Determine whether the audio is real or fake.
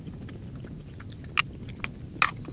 real